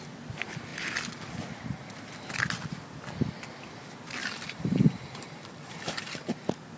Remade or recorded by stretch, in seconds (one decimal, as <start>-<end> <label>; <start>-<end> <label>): 0.0-4.2 recorded; 4.2-6.3 remade; 6.3-6.8 recorded